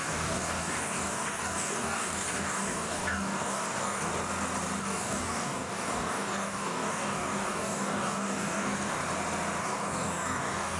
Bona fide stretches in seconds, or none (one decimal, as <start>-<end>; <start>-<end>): 4.1-4.8; 9.0-9.6